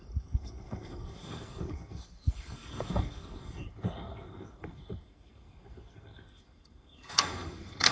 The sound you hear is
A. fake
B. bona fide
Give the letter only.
A